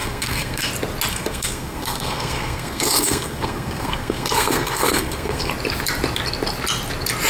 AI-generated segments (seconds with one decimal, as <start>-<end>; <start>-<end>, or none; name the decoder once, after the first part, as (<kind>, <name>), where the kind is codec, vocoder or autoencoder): 0.0-0.7 (codec, SNAC); 1.1-5.5